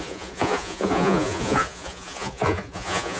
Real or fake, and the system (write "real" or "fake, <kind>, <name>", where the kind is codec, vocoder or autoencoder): fake, vocoder, Vocos